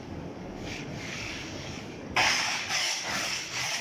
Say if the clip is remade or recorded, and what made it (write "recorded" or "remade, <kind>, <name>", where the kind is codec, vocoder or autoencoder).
remade, codec, DAC